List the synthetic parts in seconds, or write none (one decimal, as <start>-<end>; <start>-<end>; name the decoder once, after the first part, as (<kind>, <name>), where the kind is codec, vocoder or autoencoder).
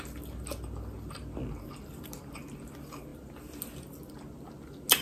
none